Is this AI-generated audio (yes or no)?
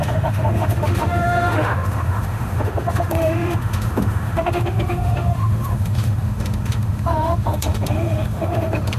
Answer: yes